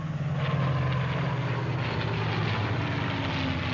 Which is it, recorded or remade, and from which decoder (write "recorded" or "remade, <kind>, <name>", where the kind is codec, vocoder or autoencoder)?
recorded